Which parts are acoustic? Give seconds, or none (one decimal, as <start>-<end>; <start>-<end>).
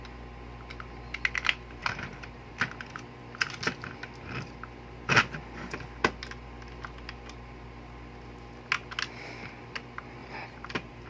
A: 0.0-1.8; 2.5-10.2